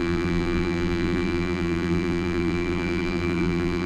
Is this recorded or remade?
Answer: remade